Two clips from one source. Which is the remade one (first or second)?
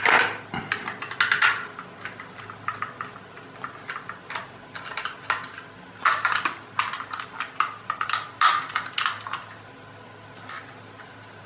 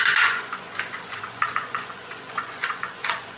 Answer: second